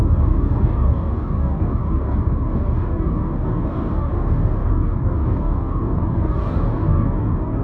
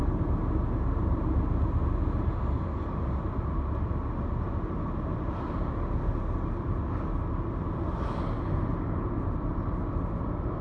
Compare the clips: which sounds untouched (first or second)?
second